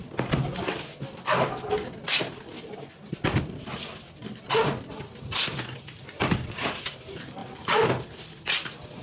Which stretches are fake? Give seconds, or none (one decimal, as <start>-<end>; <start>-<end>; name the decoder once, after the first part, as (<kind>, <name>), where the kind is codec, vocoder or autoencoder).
7.4-8.3 (vocoder, BigVGAN v2)